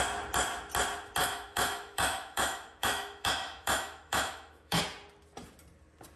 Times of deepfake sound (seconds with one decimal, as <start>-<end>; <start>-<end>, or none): 1.2-4.8